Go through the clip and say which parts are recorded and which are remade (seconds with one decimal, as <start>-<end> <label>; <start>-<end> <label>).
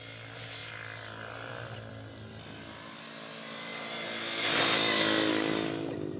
0.0-6.2 recorded